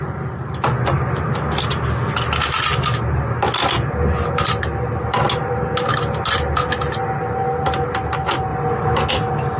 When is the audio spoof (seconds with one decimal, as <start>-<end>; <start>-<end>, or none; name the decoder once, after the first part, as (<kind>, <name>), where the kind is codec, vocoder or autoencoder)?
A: none